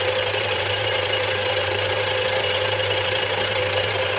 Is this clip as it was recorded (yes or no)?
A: no